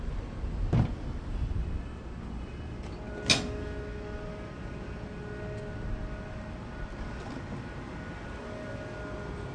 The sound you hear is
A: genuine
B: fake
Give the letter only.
A